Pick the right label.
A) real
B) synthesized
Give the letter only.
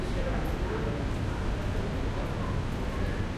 A